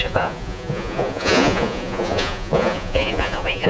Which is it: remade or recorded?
remade